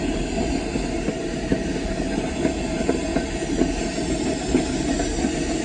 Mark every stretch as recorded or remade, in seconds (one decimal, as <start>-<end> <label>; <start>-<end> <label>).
0.0-5.6 recorded